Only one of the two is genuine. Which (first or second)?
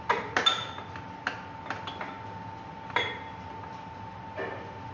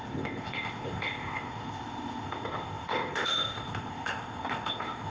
first